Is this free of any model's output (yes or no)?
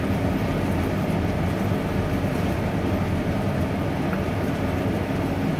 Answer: yes